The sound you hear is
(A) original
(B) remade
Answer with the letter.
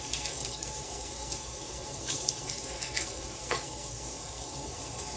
B